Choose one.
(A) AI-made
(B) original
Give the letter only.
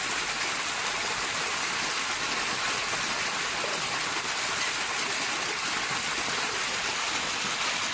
B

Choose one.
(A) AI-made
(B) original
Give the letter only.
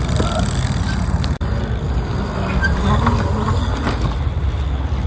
B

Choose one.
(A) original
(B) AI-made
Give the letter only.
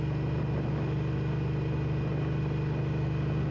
A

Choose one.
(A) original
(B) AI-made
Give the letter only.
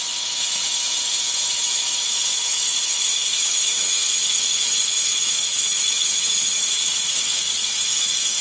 B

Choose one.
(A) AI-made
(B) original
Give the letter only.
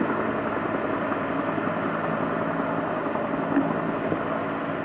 B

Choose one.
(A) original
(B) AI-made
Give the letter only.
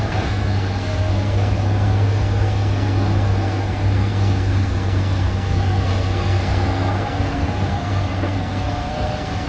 B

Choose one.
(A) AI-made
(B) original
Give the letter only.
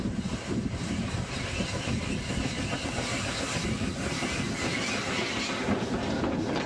B